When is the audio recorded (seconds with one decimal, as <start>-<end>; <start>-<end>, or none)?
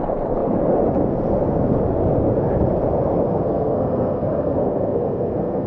0.0-3.3